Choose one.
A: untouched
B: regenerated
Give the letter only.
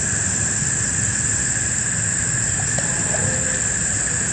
A